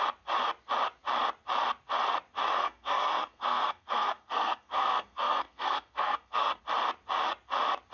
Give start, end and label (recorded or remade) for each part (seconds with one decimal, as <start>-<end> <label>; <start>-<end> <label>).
0.0-2.6 recorded; 2.6-6.6 remade; 6.6-7.9 recorded